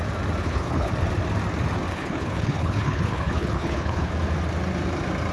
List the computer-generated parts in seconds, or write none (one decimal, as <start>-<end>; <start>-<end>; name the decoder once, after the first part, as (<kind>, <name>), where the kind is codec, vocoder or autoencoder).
0.4-0.9 (codec, HILCodec); 1.9-4.1